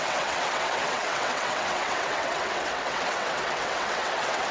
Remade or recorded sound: remade